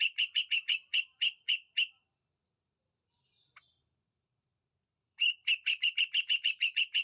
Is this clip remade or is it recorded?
remade